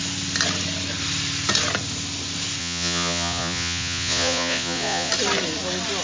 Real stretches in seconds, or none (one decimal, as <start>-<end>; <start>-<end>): 0.0-2.6; 5.1-6.0